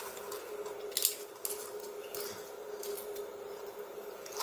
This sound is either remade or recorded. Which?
recorded